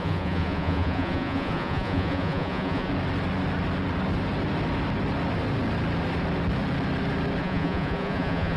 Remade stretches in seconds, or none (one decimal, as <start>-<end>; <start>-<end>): 0.0-2.9; 7.4-8.6

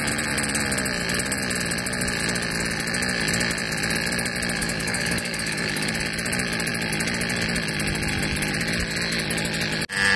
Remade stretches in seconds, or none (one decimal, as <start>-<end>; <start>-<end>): 4.6-5.9

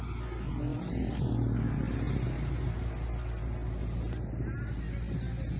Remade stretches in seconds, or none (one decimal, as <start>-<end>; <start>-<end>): 0.7-1.3